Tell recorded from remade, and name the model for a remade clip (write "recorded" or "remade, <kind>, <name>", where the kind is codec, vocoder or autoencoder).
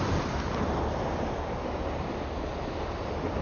recorded